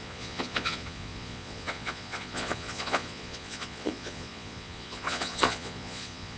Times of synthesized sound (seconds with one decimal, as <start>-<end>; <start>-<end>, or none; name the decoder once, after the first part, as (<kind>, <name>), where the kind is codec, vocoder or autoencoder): 0.0-6.4 (vocoder, Vocos)